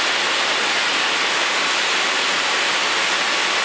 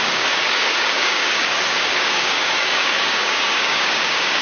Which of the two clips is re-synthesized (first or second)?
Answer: second